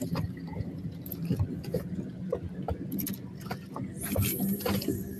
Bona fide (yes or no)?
yes